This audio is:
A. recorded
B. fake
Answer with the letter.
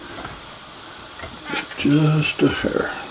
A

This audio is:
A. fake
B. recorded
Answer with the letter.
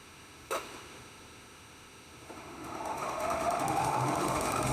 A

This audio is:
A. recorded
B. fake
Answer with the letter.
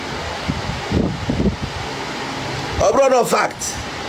A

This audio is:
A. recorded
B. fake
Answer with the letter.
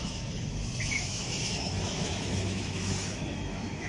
B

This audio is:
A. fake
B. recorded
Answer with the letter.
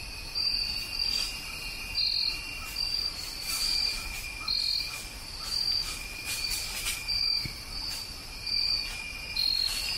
B